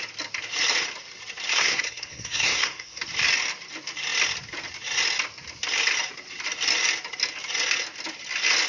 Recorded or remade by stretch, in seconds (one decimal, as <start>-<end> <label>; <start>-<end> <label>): 0.0-1.5 recorded; 1.5-3.0 remade; 3.0-8.7 recorded